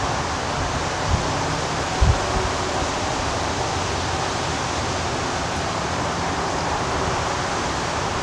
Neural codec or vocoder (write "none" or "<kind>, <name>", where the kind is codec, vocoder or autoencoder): none